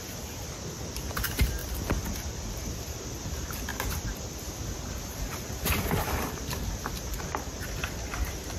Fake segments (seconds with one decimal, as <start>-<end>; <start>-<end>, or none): none